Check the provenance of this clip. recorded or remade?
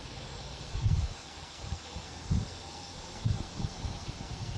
remade